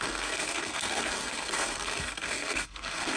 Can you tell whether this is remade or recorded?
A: remade